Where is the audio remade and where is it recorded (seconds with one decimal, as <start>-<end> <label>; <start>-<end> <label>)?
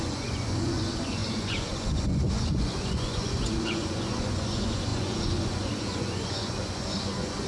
0.0-7.5 remade